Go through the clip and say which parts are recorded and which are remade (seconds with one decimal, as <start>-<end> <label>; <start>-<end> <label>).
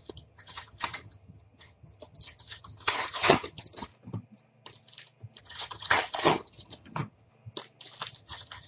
0.0-3.9 remade; 3.9-5.4 recorded; 5.4-7.3 remade; 7.3-8.2 recorded; 8.2-8.7 remade